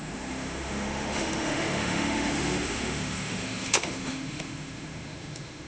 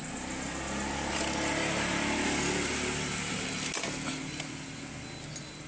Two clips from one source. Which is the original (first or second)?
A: second